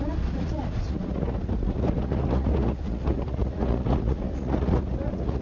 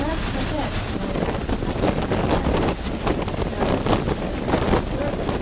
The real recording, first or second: second